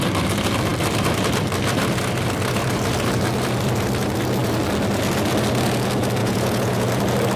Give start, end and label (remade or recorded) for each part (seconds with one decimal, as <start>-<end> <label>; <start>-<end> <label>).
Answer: 0.0-6.2 recorded; 6.2-6.9 remade; 6.9-7.4 recorded